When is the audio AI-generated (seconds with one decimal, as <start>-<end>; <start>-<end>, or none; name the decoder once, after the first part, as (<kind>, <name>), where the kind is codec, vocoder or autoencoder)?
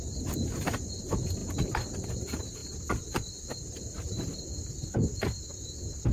none